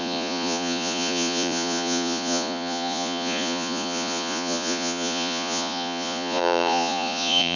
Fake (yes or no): yes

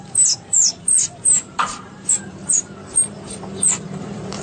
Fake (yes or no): yes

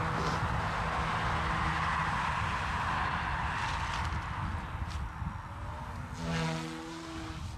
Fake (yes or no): no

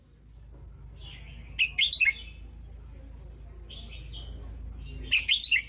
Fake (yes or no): no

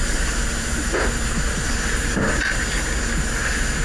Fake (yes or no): no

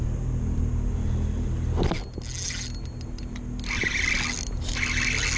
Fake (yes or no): no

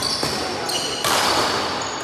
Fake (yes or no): no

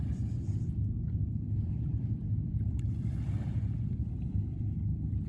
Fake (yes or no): yes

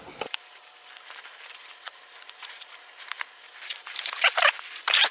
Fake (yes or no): yes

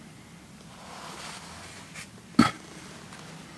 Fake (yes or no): no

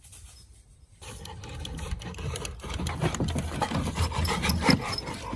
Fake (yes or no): yes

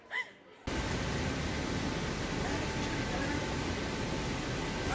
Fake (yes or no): no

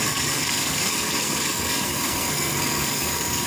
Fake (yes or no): yes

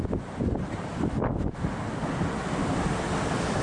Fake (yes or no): no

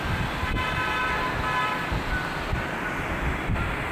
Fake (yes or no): no